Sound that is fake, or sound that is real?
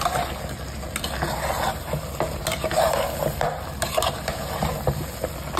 real